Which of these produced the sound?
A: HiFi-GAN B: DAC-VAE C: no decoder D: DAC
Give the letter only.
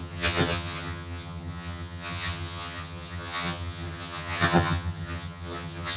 A